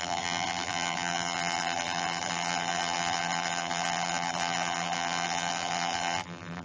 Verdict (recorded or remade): remade